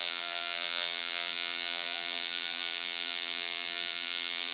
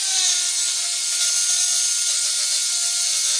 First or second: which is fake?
first